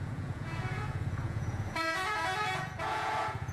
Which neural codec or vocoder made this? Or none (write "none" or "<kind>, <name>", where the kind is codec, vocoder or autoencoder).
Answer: vocoder, Vocos